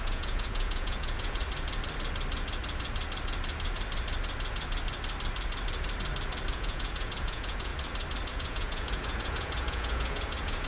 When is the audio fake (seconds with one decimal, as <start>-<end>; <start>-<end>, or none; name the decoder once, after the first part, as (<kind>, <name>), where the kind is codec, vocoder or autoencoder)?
0.0-1.4 (vocoder, Vocos); 6.5-7.7; 8.3-10.7

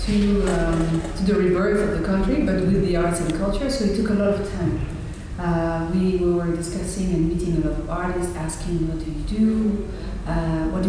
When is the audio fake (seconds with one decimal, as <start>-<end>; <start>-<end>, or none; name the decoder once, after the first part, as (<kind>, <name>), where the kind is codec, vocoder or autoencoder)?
none